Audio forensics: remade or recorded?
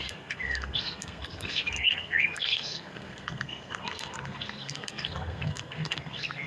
remade